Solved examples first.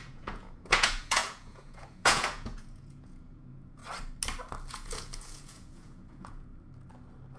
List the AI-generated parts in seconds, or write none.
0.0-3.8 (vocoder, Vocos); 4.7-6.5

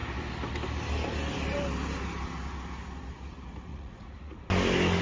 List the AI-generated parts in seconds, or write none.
3.7-4.4 (vocoder, Vocos)

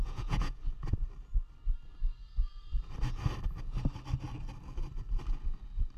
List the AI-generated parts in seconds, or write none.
0.0-0.6 (vocoder, Vocos)